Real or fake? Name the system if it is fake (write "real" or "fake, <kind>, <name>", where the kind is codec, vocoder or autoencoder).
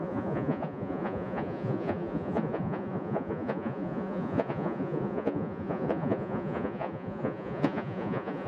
fake, vocoder, Vocos